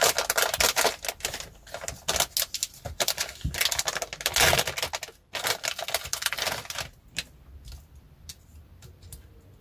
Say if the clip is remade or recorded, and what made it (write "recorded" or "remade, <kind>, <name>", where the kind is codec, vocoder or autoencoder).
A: recorded